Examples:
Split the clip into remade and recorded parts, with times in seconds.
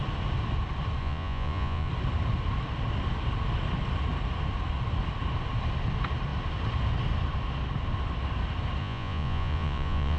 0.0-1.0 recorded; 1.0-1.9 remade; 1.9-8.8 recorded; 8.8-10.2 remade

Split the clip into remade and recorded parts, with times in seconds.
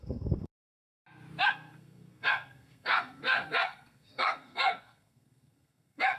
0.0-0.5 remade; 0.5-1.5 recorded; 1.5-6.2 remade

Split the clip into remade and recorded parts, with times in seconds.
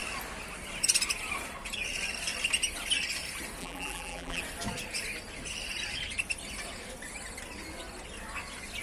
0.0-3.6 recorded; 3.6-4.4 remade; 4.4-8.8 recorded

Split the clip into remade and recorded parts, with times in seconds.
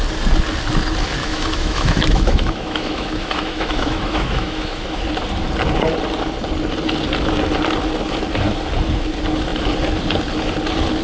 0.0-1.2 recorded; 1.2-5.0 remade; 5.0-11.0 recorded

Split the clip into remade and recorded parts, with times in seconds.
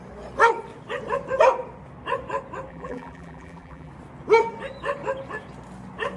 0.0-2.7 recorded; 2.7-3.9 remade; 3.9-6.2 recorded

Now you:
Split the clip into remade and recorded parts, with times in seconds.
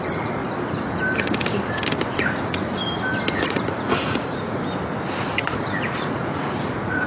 0.0-0.4 remade; 0.4-2.1 recorded; 2.1-2.8 remade; 2.8-3.3 recorded; 3.3-4.6 remade; 4.6-5.4 recorded; 5.4-7.1 remade